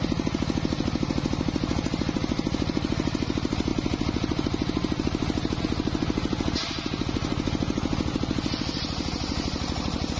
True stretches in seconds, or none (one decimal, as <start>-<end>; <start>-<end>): 0.0-10.2

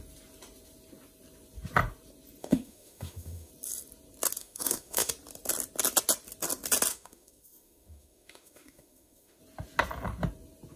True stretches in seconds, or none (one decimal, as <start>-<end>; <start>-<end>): 0.0-2.4; 3.5-4.4; 5.1-6.9; 9.4-10.8

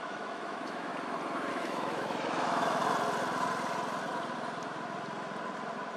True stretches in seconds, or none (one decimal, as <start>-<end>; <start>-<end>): 0.9-1.5; 2.8-6.0

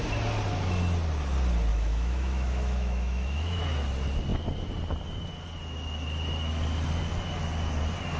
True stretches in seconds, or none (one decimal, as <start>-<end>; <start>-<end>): 0.0-1.7; 3.6-8.2

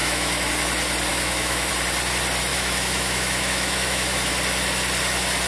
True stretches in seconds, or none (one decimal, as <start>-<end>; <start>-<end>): 0.5-1.1; 1.7-2.5; 4.3-5.5

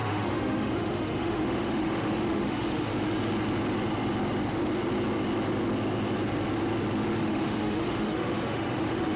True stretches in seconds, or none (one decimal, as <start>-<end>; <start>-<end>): 2.9-7.2

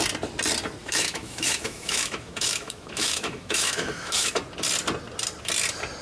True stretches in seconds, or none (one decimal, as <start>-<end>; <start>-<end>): 0.0-0.8; 4.4-6.0

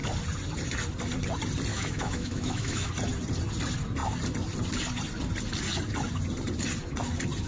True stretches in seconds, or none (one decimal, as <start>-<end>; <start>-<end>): 0.0-1.7; 2.9-7.5